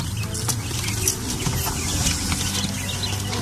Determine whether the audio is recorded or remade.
recorded